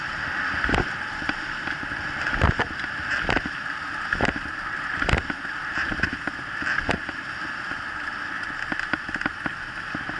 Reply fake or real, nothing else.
real